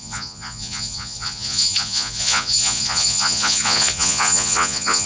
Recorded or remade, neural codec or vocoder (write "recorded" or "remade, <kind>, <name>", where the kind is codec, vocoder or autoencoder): remade, vocoder, Vocos